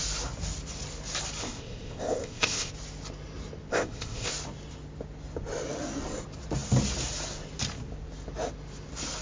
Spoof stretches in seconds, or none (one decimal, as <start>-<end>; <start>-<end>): 1.4-2.7; 3.7-4.3